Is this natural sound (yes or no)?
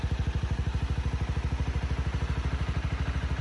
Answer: yes